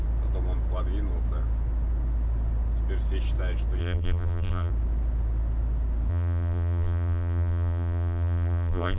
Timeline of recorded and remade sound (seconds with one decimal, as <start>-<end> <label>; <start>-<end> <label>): 0.0-3.8 recorded; 3.8-4.7 remade; 4.7-6.1 recorded; 6.1-9.0 remade